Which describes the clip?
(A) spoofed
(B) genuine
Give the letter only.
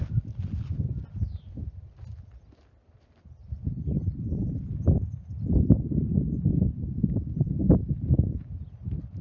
B